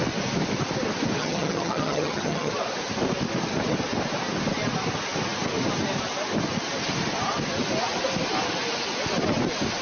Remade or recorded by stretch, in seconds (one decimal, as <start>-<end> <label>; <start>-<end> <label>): 0.0-1.2 recorded; 1.2-2.5 remade; 2.5-9.8 recorded